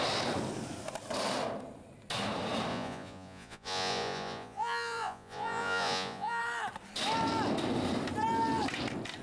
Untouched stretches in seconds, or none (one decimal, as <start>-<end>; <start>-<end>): 0.0-2.7; 6.4-9.2